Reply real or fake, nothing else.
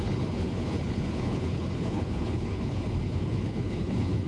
fake